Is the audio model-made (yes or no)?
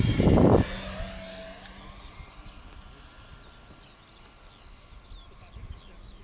no